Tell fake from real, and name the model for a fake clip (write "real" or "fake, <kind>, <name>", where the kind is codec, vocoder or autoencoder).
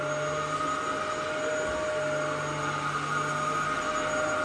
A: real